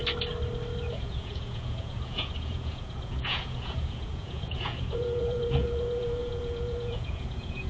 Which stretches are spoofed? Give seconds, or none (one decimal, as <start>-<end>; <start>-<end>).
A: 0.9-7.7

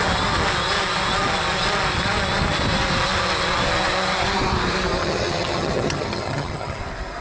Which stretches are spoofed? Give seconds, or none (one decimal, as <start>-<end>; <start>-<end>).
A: 5.0-6.8

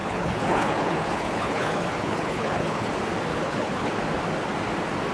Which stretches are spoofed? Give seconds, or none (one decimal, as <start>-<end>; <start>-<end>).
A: 0.0-2.9; 3.3-3.9

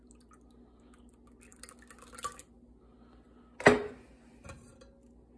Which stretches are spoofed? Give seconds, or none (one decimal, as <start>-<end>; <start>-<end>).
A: none

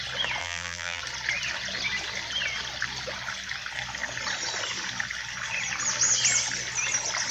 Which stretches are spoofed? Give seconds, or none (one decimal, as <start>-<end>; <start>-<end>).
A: 0.4-1.0

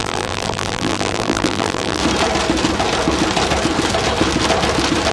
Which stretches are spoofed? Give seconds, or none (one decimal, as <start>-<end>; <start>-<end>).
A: 0.0-2.0